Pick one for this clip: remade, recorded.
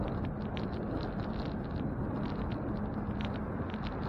recorded